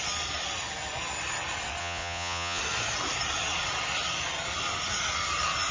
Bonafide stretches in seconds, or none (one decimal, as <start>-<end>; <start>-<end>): 0.0-1.8; 2.6-5.7